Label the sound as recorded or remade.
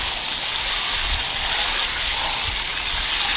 recorded